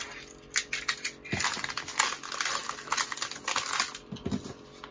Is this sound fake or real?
real